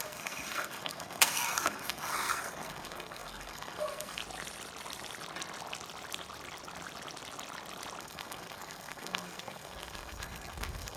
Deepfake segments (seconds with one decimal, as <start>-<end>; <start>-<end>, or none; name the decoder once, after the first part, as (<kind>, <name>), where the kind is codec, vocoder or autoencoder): 0.0-4.2 (codec, SNAC); 8.0-11.0